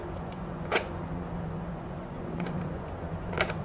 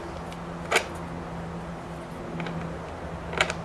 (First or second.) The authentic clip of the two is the second